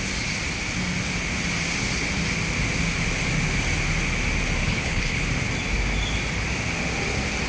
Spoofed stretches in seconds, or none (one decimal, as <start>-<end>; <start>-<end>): 4.6-5.3